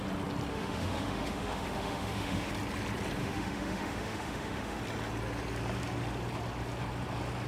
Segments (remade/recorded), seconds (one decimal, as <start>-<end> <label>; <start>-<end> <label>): 0.0-0.5 recorded; 0.5-2.5 remade; 2.5-3.2 recorded; 3.2-4.8 remade; 4.8-7.5 recorded